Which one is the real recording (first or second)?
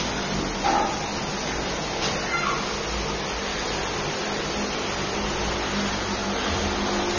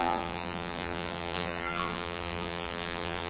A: first